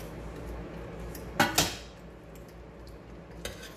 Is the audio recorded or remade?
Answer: recorded